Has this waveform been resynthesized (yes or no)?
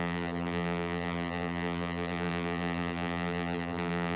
yes